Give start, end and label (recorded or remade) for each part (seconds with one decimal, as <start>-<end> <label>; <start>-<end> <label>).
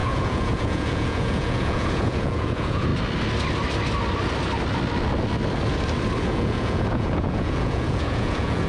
0.0-2.9 remade; 2.9-6.2 recorded; 6.2-8.7 remade